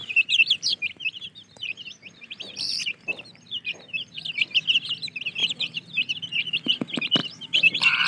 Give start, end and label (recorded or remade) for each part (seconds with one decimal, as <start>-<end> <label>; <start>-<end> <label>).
0.0-4.2 remade; 4.2-5.4 recorded; 5.4-6.7 remade; 6.7-7.2 recorded; 7.2-8.1 remade